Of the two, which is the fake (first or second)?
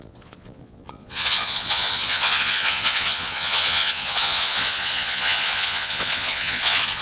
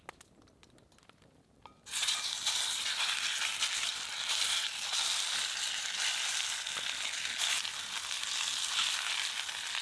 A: first